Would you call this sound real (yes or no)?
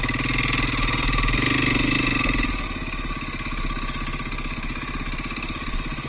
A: yes